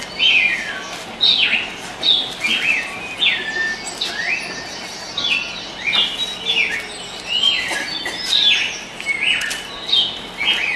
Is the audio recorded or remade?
recorded